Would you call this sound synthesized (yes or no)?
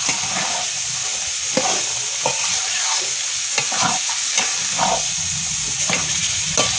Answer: no